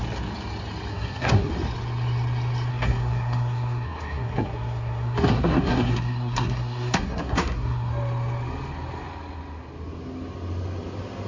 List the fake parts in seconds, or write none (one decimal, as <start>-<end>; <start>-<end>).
0.9-1.5; 2.7-7.9